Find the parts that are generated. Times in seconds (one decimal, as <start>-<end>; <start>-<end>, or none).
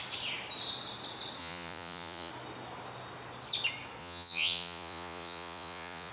1.4-2.3; 4.0-6.1